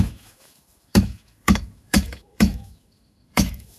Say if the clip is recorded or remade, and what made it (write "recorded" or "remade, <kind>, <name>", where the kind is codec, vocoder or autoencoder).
remade, autoencoder, DAC-VAE